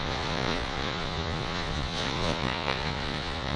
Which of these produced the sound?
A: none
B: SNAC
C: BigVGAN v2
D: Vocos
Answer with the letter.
D